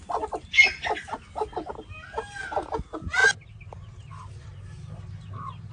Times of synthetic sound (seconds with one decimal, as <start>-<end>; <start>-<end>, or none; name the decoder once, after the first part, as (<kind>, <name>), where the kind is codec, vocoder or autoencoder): none